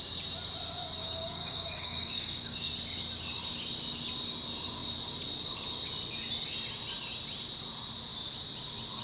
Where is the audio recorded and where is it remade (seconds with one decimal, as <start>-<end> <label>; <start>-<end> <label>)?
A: 0.0-1.0 recorded; 1.0-2.7 remade; 2.7-9.0 recorded